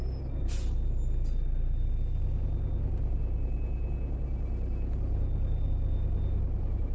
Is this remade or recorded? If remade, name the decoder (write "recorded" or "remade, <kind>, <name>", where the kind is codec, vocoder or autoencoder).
recorded